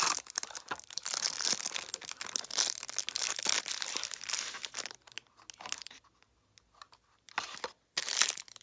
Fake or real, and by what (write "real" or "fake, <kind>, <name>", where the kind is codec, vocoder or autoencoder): real